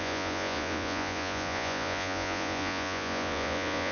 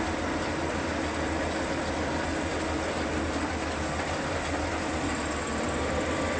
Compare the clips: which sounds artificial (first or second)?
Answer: first